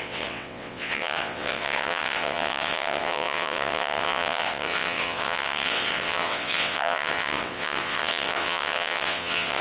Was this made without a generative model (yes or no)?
no